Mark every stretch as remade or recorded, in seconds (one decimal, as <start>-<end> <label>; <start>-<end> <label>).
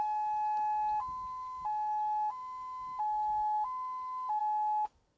0.0-5.2 recorded